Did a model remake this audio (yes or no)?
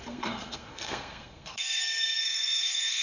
yes